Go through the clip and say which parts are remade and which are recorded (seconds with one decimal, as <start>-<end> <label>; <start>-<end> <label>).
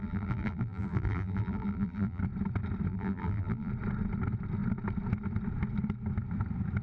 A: 0.0-2.2 remade; 2.2-2.9 recorded; 2.9-3.7 remade; 3.7-6.8 recorded